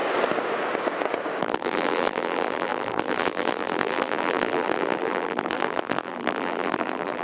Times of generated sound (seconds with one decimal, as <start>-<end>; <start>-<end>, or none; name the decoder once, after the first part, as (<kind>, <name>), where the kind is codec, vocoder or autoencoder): 1.4-7.2 (vocoder, BigVGAN v2)